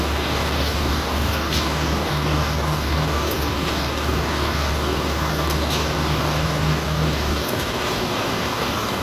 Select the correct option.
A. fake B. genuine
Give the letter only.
A